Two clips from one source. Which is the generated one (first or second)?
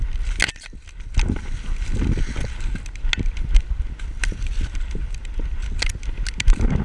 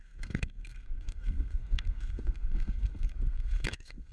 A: second